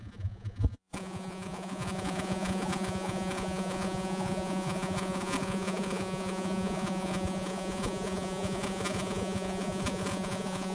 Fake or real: fake